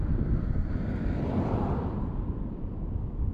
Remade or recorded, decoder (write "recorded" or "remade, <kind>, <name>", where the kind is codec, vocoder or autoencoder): recorded